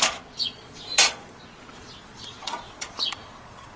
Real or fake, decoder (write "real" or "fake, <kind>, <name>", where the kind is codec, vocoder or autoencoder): fake, vocoder, Vocos